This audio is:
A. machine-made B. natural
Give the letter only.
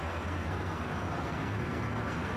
A